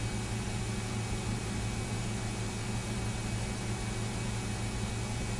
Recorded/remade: recorded